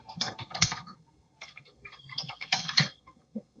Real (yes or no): no